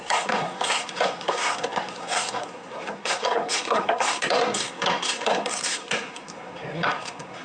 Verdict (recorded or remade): remade